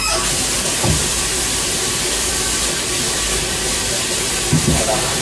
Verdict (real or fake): fake